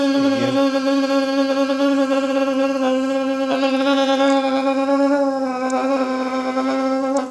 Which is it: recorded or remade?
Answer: recorded